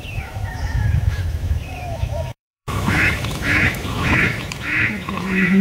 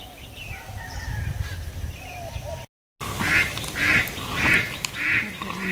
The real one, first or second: second